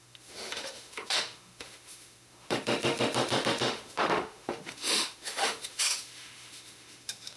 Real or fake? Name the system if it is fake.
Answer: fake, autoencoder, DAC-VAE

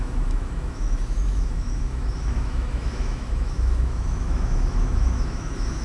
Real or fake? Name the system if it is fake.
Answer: fake, autoencoder, DAC-VAE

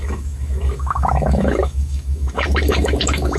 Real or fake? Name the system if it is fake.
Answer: fake, autoencoder, DAC-VAE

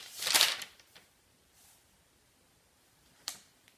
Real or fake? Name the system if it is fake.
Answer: real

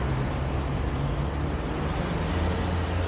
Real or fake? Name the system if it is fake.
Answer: real